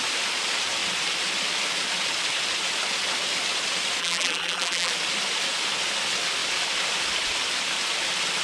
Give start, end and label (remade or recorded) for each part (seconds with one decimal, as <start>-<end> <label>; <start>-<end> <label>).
0.0-4.0 recorded; 4.0-4.9 remade; 4.9-8.4 recorded